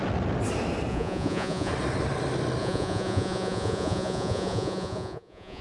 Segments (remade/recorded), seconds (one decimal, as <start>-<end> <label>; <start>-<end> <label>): 0.0-0.9 recorded; 0.9-1.7 remade; 1.7-2.6 recorded; 2.6-5.6 remade